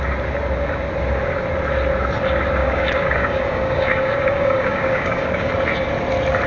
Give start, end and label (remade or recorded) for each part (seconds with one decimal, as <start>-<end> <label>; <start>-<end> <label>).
0.0-2.6 recorded; 2.6-5.5 remade; 5.5-6.5 recorded